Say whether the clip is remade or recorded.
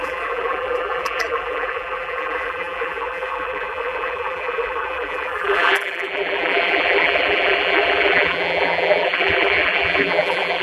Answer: remade